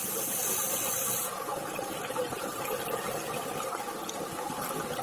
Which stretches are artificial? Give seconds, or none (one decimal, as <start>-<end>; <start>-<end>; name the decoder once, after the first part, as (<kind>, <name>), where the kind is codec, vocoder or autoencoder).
1.6-2.8 (vocoder, BigVGAN v2)